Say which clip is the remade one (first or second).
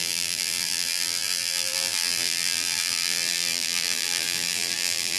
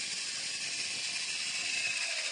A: first